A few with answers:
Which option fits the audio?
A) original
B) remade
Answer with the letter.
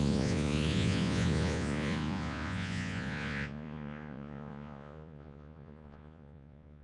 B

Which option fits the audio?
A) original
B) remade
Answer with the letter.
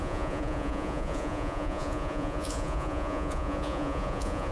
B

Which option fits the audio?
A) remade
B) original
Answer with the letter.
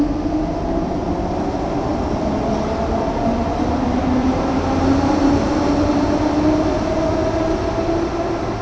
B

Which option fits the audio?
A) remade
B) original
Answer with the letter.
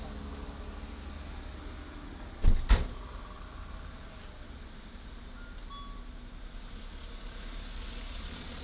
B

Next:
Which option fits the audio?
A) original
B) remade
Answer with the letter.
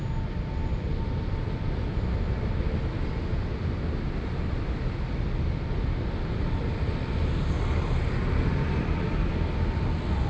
A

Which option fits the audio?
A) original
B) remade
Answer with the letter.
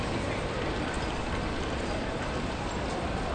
A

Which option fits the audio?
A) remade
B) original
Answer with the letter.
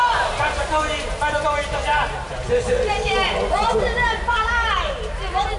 B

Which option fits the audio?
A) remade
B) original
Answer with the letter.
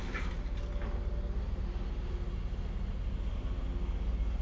B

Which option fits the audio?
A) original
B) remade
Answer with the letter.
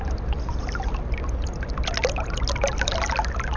A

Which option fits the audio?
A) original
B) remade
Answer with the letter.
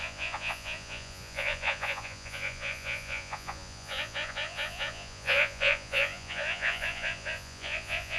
B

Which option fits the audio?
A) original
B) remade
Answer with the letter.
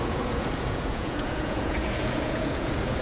B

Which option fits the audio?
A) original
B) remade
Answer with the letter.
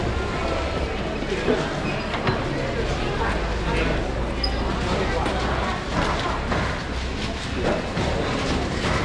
A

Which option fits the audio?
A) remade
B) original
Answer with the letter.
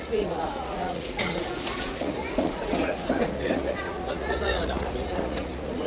A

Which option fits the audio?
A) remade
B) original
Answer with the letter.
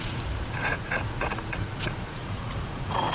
A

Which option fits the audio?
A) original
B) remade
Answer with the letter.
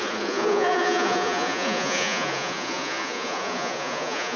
B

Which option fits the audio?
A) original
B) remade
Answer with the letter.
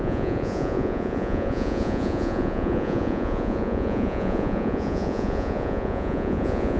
B